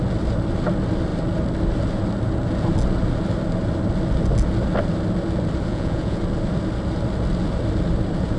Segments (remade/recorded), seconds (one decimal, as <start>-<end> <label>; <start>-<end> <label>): 0.0-5.7 recorded; 5.7-6.2 remade; 6.2-8.4 recorded